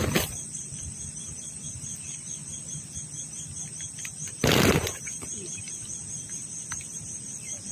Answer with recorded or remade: recorded